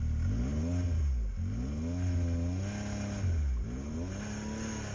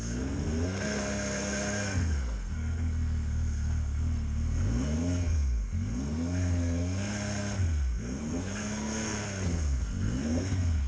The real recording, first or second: first